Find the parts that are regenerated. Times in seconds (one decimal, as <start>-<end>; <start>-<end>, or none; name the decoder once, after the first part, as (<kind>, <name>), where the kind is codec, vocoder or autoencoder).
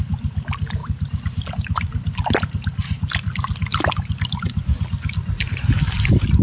0.8-1.5 (vocoder, BigVGAN v2)